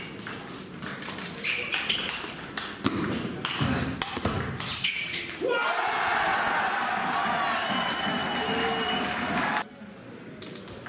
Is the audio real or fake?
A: real